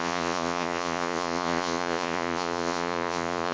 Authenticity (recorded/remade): remade